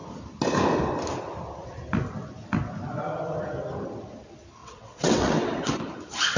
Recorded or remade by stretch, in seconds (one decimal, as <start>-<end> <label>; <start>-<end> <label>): 0.0-4.6 recorded; 4.6-5.8 remade; 5.8-6.4 recorded